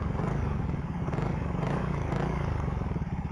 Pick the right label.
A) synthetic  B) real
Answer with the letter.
A